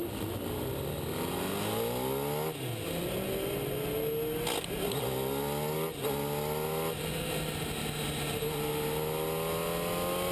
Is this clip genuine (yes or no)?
yes